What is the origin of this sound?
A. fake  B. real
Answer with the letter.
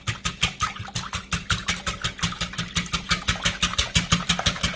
B